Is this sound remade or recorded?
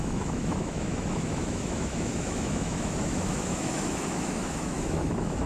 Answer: remade